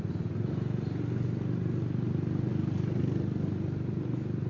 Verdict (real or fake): real